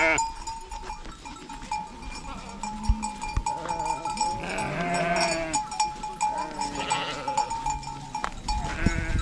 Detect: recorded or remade recorded